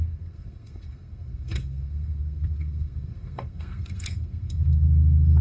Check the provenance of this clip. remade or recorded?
remade